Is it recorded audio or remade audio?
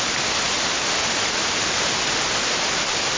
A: recorded